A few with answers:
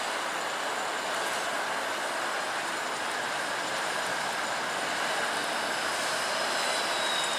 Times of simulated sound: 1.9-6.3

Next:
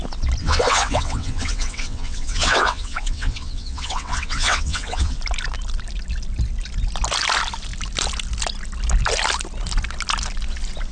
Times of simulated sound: 0.4-5.2

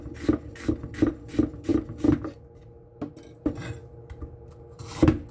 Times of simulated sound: none

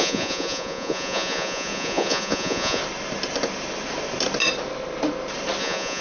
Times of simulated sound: 0.0-2.8; 5.6-6.0

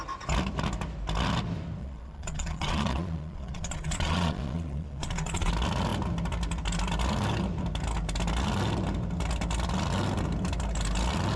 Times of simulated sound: 1.8-5.5

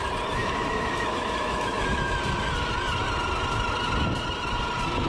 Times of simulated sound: 0.4-2.2